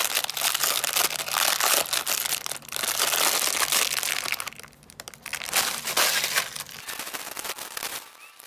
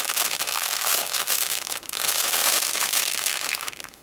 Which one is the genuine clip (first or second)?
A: first